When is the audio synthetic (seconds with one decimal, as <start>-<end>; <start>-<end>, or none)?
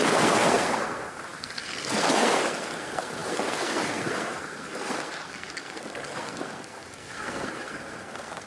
0.0-8.5